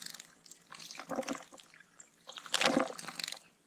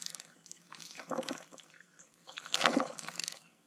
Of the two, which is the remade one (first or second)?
second